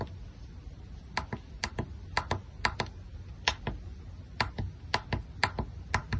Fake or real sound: real